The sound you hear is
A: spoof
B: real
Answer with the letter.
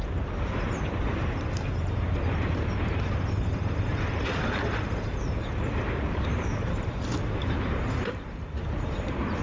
A